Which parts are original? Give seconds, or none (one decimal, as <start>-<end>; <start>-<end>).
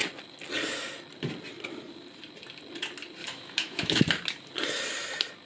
0.0-3.2; 4.0-5.5